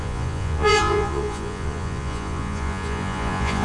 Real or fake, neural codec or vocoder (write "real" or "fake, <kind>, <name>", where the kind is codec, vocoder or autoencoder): fake, vocoder, Vocos